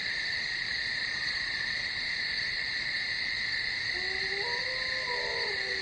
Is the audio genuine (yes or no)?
yes